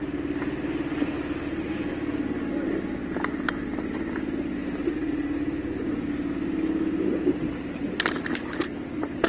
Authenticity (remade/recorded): recorded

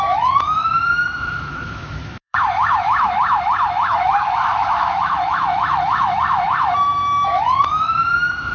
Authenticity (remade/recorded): remade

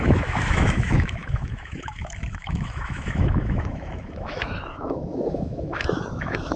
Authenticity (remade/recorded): remade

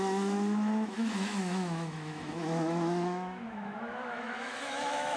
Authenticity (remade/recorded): remade